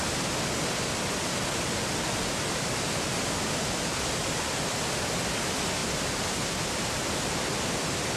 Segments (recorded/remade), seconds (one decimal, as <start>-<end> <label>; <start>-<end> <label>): 0.0-5.8 recorded; 5.8-6.6 remade; 6.6-8.2 recorded